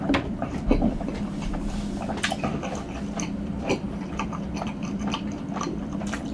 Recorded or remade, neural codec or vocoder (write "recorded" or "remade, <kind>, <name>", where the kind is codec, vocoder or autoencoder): remade, vocoder, BigVGAN v2